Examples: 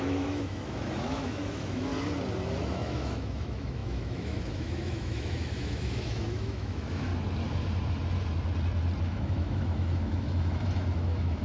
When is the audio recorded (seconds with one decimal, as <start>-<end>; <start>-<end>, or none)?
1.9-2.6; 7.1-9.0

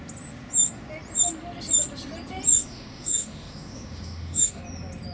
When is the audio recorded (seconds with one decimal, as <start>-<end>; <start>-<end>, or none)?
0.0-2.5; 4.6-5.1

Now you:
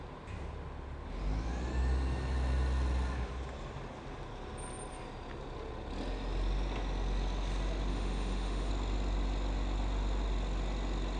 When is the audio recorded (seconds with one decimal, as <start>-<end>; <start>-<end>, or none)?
0.0-7.9; 8.7-11.2